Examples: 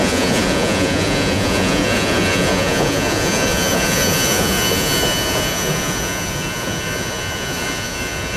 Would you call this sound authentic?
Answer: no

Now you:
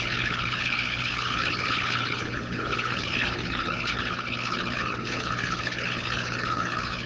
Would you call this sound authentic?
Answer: no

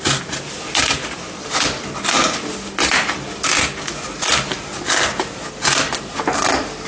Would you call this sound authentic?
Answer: yes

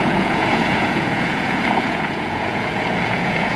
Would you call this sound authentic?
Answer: no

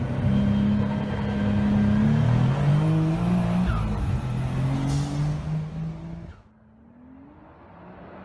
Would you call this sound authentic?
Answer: yes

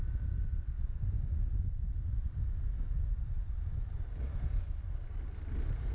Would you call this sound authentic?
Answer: yes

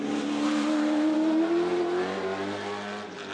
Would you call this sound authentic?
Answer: yes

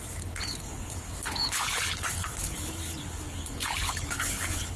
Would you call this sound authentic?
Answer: no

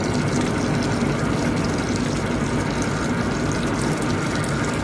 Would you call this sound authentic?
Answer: yes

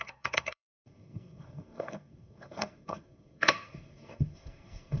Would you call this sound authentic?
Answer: no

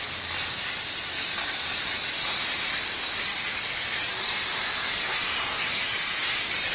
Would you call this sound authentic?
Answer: yes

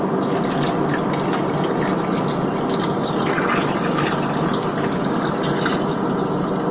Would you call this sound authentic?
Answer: yes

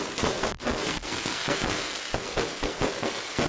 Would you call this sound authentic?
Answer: no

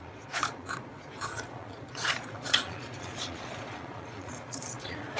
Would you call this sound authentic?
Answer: no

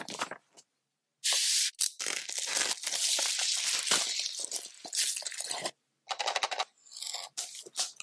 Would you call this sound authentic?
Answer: yes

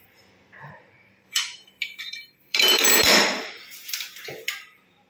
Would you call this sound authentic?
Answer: no